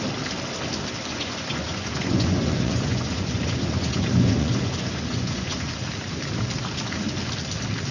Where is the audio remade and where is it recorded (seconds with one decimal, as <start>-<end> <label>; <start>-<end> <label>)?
0.0-1.1 recorded; 1.1-5.7 remade; 5.7-7.9 recorded